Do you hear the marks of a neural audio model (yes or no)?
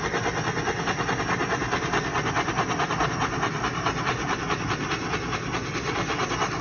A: no